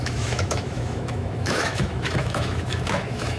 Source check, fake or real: fake